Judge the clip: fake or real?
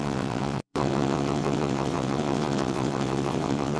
fake